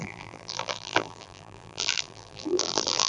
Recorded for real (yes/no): no